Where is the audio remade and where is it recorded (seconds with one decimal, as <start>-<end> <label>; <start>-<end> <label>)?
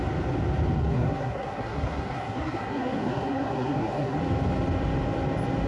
0.0-0.8 recorded; 0.8-4.2 remade; 4.2-5.7 recorded